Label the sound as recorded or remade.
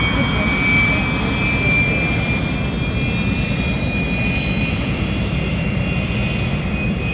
recorded